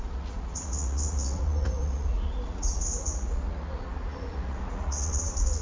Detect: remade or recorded remade